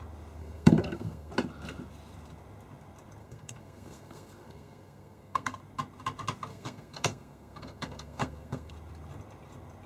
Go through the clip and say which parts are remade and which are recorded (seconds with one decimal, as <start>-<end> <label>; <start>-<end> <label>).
0.0-0.4 recorded; 0.4-1.3 remade; 1.3-3.2 recorded; 3.2-5.6 remade; 5.6-6.5 recorded; 6.5-8.7 remade; 8.7-9.9 recorded

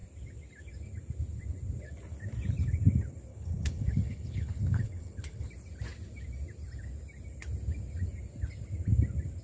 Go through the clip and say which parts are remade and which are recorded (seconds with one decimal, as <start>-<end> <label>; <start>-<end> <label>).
0.0-3.3 recorded; 3.3-5.5 remade; 5.5-9.4 recorded

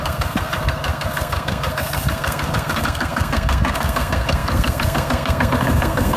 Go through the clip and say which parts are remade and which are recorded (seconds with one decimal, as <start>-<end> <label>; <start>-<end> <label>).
0.0-6.2 remade

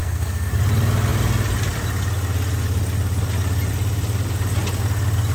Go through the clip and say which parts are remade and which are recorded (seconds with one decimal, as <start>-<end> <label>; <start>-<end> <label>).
0.0-0.5 remade; 0.5-5.3 recorded

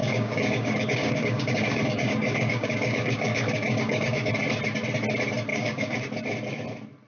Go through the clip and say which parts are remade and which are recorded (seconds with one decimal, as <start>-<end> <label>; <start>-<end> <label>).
0.0-4.3 remade; 4.3-5.5 recorded; 5.5-6.0 remade; 6.0-7.1 recorded

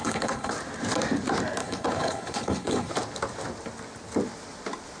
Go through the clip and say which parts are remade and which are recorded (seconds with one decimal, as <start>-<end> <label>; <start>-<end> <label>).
0.0-0.5 remade; 0.5-1.6 recorded; 1.6-2.9 remade; 2.9-5.0 recorded

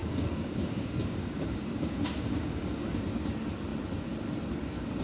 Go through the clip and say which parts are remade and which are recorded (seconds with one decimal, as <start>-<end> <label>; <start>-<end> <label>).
0.0-3.0 remade; 3.0-5.0 recorded

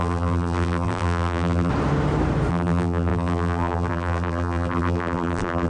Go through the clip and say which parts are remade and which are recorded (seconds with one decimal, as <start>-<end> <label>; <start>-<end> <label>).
0.0-1.7 remade; 1.7-2.5 recorded; 2.5-5.7 remade